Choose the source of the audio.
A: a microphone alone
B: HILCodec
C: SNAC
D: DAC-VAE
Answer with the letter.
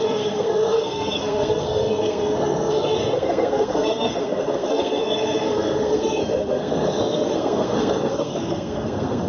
C